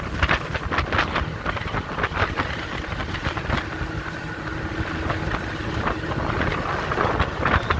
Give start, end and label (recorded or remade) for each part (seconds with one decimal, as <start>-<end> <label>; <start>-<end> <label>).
0.0-7.8 recorded